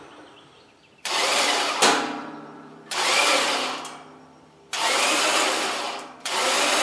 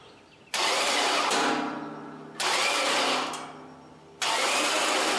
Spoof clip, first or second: first